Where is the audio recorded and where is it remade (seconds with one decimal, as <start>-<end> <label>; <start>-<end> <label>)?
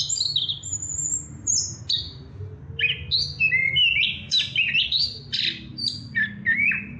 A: 0.0-0.5 recorded; 0.5-1.8 remade; 1.8-7.0 recorded